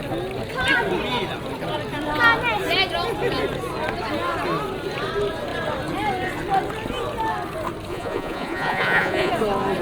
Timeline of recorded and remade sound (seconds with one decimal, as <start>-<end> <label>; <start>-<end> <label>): 0.0-7.9 recorded; 7.9-9.3 remade; 9.3-9.8 recorded